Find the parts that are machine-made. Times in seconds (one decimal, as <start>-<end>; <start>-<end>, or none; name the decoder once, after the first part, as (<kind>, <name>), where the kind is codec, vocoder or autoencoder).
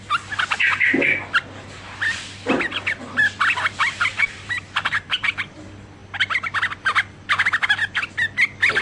4.1-5.3 (vocoder, BigVGAN v2)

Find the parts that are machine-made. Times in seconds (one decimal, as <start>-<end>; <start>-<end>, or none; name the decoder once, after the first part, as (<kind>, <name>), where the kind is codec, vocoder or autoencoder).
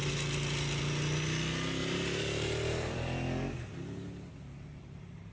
1.8-5.3 (vocoder, BigVGAN v2)